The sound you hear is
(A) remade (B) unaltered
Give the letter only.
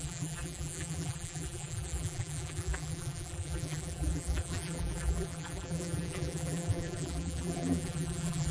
A